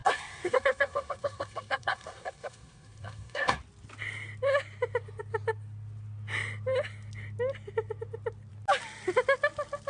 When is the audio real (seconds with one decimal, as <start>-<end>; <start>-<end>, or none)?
3.6-9.9